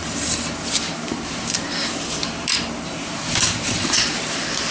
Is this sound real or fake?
fake